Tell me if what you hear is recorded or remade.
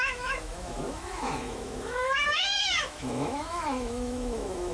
remade